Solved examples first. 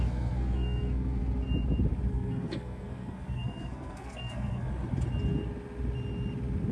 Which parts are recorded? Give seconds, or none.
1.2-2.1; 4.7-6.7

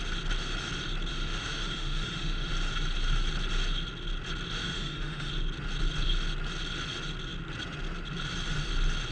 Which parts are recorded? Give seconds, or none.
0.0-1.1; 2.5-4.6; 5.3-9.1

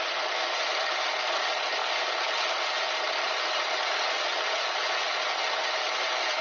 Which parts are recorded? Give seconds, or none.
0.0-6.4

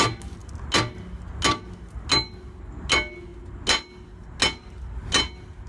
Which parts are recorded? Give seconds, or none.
0.0-5.7